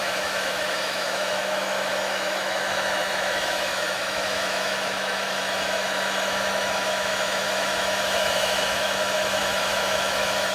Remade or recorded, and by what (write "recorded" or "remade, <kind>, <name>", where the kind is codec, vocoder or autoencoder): remade, autoencoder, DAC-VAE